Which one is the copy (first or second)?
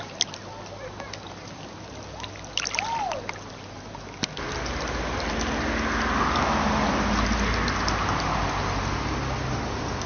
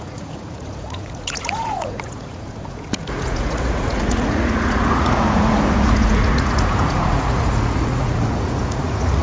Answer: second